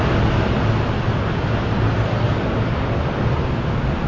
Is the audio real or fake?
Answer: real